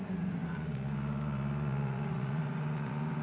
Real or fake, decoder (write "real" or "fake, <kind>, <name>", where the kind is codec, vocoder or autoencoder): fake, vocoder, Vocos